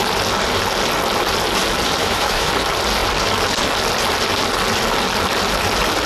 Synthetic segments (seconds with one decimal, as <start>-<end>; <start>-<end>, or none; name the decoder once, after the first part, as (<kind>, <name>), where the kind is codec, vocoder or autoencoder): 2.0-2.5 (autoencoder, DAC-VAE)